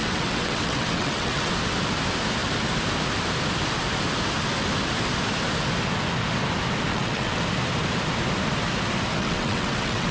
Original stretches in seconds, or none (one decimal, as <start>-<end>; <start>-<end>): 1.5-6.9; 7.4-9.2